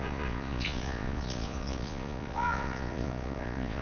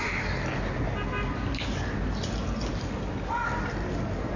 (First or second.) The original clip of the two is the second